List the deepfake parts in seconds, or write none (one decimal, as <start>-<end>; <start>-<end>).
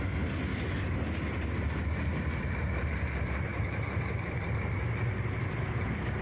0.0-0.5; 2.4-6.2